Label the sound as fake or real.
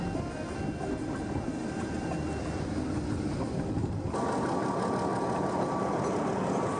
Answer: real